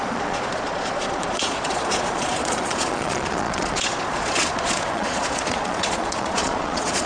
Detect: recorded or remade remade